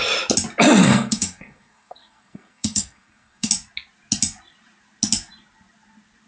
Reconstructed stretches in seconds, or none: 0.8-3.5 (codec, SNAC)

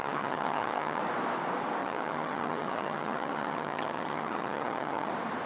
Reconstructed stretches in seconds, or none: 0.0-1.0 (vocoder, HiFi-GAN); 1.8-5.1

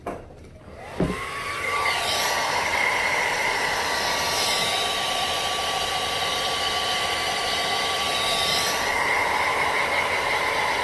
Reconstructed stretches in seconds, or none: 2.7-3.8 (vocoder, BigVGAN v2)

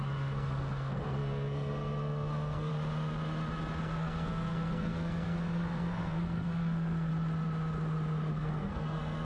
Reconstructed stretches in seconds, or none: 0.0-2.7 (codec, SNAC); 3.8-7.1; 8.3-9.2

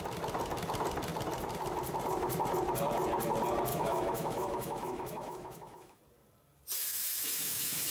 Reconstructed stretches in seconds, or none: 3.7-6.0 (autoencoder, DAC-VAE); 6.8-7.9

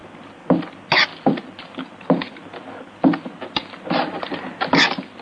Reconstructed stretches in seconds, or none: none

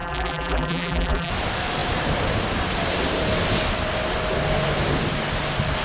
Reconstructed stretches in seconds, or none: 0.0-1.3 (vocoder, BigVGAN v2)